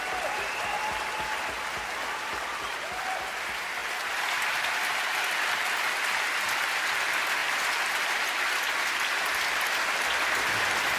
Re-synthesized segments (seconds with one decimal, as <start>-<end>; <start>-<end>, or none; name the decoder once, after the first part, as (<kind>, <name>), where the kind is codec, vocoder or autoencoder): none